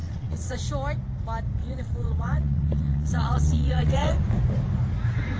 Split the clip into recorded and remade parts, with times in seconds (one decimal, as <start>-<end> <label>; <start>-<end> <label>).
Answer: 0.0-0.6 remade; 0.6-1.6 recorded; 1.6-4.2 remade; 4.2-5.4 recorded